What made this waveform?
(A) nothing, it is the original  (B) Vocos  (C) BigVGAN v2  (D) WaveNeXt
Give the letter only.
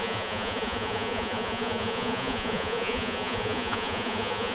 B